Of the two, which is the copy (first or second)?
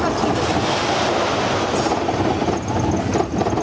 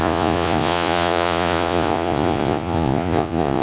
second